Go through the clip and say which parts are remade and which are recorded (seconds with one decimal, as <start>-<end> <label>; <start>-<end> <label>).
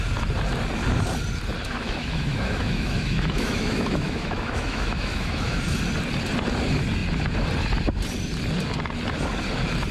0.0-1.7 recorded; 1.7-5.6 remade; 5.6-9.9 recorded